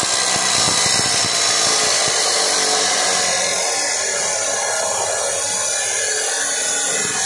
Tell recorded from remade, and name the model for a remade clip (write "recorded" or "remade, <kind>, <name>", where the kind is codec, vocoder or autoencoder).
recorded